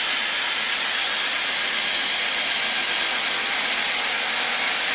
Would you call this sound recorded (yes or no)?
yes